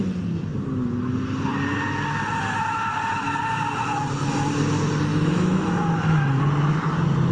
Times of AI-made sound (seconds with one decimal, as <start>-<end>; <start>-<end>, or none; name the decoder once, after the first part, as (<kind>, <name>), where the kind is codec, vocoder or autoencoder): 5.1-6.4 (autoencoder, DAC-VAE)